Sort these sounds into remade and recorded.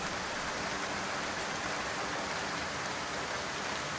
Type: recorded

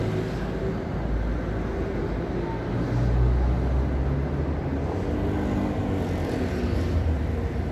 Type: recorded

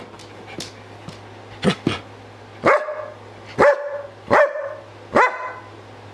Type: recorded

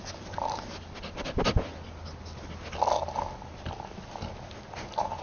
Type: recorded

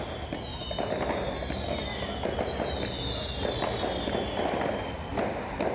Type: recorded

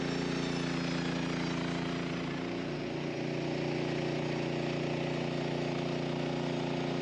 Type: recorded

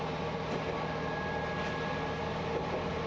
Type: recorded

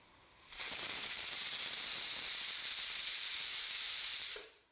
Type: remade